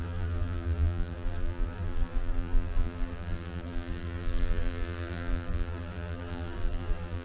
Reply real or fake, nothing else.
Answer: fake